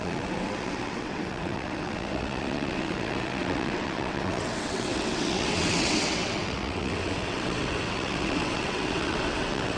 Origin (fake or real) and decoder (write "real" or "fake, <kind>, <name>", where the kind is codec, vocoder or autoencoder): fake, vocoder, WaveNeXt